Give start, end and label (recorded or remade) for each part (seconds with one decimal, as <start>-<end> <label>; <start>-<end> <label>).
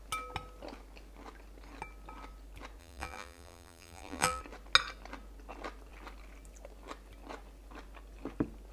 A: 0.0-2.8 recorded; 2.8-4.4 remade; 4.4-8.7 recorded